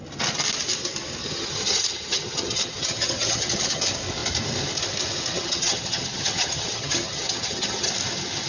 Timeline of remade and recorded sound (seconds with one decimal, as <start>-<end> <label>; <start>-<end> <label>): 0.0-1.2 recorded; 1.2-3.8 remade; 3.8-5.3 recorded; 5.3-7.9 remade; 7.9-8.5 recorded